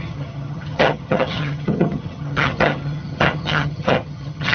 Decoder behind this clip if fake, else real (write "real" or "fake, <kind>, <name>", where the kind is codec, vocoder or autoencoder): fake, vocoder, HiFi-GAN